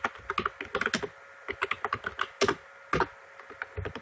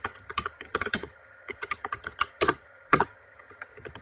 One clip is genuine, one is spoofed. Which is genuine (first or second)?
first